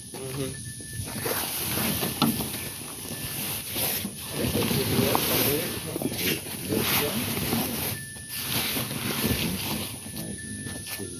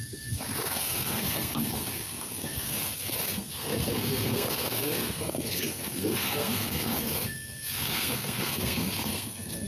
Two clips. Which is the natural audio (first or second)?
first